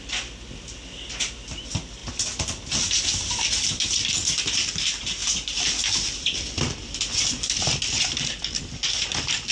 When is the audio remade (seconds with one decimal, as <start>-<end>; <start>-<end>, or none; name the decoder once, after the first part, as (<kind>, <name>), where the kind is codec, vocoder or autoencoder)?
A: 5.2-8.6 (vocoder, BigVGAN v2)